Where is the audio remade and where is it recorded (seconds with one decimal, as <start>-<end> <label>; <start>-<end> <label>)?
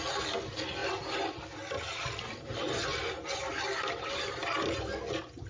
0.0-5.5 recorded